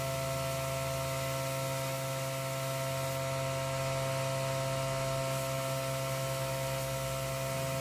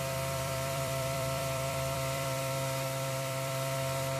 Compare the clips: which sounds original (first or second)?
first